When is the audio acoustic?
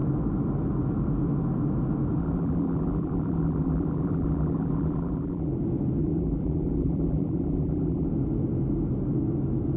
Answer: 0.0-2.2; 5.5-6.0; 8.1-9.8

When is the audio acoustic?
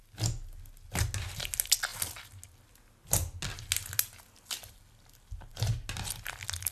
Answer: 0.0-6.7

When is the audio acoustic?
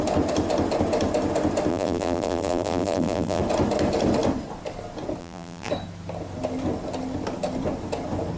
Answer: 0.0-1.7; 3.4-5.2; 5.7-8.4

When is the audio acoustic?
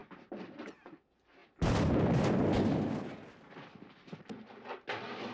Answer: 0.7-5.3